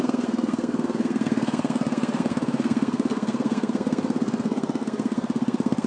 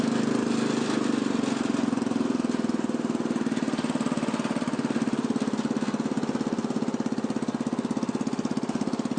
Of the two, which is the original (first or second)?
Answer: second